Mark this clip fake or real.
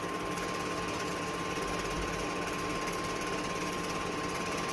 real